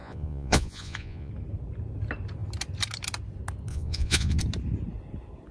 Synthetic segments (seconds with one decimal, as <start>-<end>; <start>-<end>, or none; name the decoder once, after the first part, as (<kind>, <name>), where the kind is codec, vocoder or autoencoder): 0.0-1.3 (vocoder, Vocos); 3.7-4.4